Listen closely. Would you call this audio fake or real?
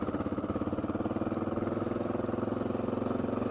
real